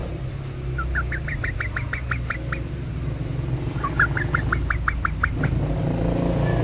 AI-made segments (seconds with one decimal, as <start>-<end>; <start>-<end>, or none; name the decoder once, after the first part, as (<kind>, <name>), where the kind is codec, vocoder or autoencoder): none